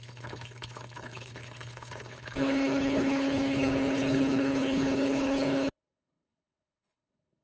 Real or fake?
fake